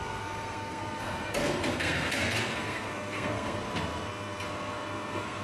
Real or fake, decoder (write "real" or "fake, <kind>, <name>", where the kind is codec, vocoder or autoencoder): fake, codec, SNAC